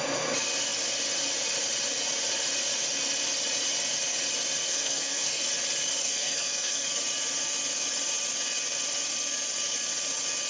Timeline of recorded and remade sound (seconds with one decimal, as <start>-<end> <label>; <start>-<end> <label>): 0.0-4.6 recorded; 4.6-5.4 remade; 5.4-6.0 recorded; 6.0-7.0 remade; 7.0-10.5 recorded

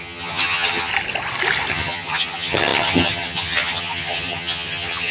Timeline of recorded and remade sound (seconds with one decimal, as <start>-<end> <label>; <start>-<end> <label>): 0.0-0.9 remade; 0.9-1.7 recorded; 1.7-5.1 remade